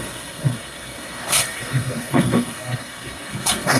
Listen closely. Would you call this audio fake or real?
fake